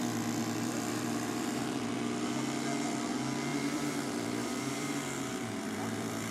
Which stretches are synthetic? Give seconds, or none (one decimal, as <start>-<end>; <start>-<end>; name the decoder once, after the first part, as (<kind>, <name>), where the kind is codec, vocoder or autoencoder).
0.4-2.0 (vocoder, BigVGAN v2); 3.5-6.3